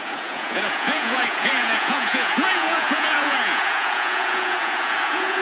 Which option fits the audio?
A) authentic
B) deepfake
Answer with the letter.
B